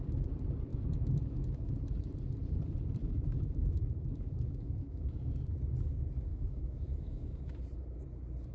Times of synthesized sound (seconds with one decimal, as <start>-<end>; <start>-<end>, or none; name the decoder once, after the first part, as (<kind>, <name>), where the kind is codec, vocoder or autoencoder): 0.7-1.7 (autoencoder, DAC-VAE); 3.0-5.3; 6.3-7.6